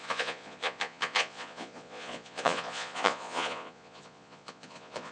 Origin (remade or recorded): remade